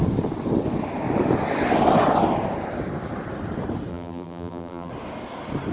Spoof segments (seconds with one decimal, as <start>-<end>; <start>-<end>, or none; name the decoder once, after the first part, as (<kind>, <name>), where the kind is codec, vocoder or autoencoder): 3.9-4.9 (vocoder, BigVGAN v2)

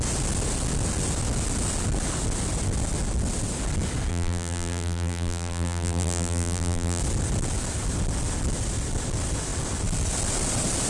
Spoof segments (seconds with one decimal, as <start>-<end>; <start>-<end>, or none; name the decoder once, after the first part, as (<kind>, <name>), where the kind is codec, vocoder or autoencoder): 4.1-7.0 (vocoder, BigVGAN v2)

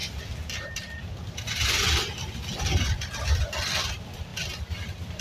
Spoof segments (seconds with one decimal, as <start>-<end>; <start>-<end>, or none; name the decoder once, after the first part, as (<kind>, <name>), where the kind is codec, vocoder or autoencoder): 0.0-4.3 (vocoder, BigVGAN v2)